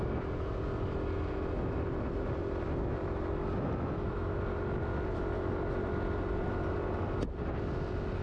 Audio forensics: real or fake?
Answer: real